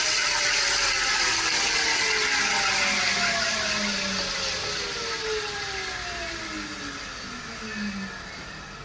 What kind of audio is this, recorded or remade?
recorded